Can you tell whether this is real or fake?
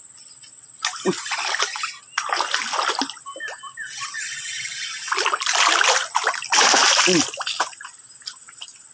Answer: real